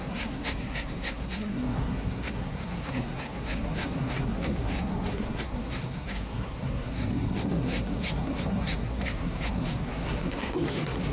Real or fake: fake